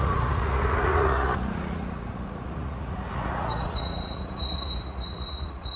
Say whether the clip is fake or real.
fake